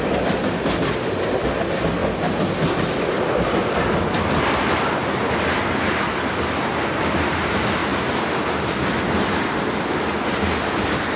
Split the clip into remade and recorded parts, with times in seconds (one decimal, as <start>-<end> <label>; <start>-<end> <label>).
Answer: 0.0-11.2 recorded